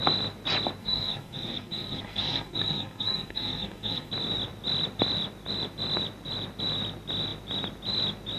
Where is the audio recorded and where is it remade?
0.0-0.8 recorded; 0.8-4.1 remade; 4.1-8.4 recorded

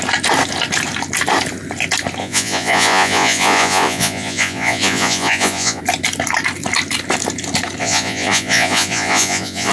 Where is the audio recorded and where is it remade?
0.0-2.2 recorded; 2.2-5.8 remade; 5.8-7.8 recorded; 7.8-9.7 remade

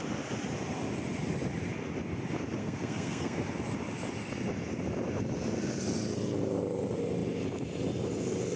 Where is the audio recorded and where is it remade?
0.0-2.6 recorded; 2.6-3.4 remade; 3.4-8.6 recorded

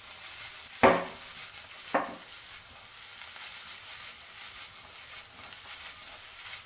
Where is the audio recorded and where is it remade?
0.0-6.7 recorded

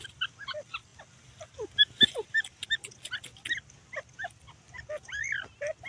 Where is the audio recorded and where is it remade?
0.0-5.9 recorded

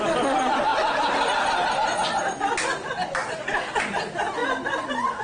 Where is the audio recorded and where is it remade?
0.0-5.2 recorded

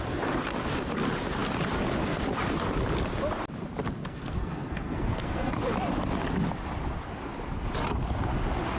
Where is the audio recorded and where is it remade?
0.0-4.0 recorded; 4.0-5.5 remade; 5.5-8.8 recorded

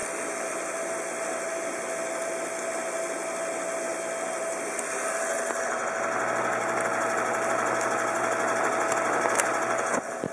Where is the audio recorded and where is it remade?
0.0-10.3 recorded